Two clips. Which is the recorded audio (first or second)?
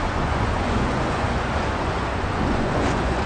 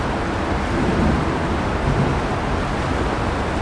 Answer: second